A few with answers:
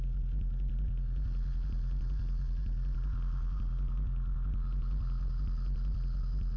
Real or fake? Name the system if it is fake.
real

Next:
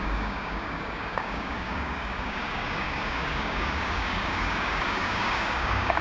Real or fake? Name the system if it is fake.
fake, codec, DAC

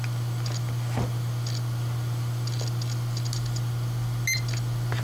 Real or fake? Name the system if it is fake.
real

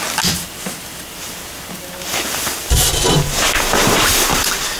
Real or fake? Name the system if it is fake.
real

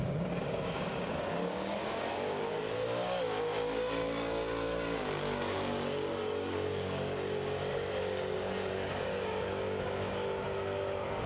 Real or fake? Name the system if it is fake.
fake, codec, DAC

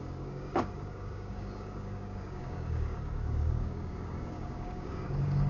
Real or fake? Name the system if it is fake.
fake, codec, DAC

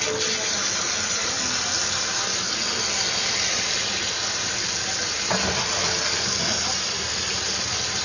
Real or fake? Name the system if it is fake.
real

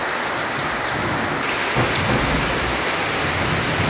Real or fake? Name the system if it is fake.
real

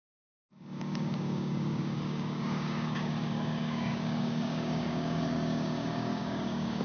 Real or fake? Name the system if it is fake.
fake, codec, DAC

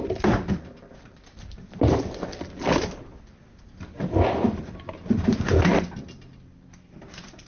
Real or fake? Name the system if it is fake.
real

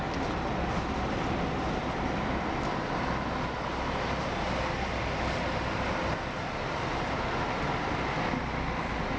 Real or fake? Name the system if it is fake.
real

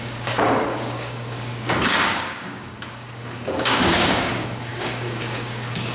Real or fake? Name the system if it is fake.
fake, codec, DAC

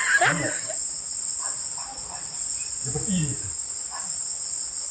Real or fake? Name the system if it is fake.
real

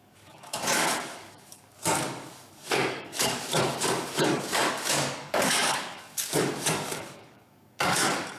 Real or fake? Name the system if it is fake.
fake, codec, DAC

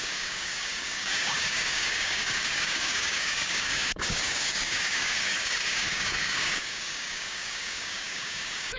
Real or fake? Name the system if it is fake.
fake, codec, DAC